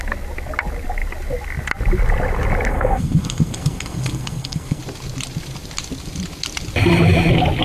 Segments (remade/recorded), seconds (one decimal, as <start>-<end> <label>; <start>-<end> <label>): 0.0-2.7 recorded; 2.7-4.8 remade; 4.8-7.6 recorded